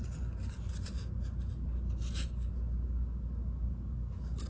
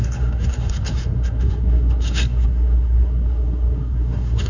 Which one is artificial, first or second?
second